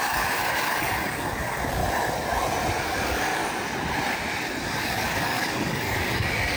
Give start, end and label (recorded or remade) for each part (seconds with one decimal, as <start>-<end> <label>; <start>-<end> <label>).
0.0-1.8 remade; 1.8-2.8 recorded; 2.8-3.4 remade; 3.4-4.6 recorded; 4.6-6.6 remade